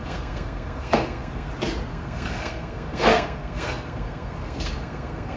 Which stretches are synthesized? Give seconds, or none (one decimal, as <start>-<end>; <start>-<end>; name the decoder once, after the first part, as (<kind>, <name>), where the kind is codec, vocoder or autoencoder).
0.0-1.5 (codec, SNAC); 1.9-5.4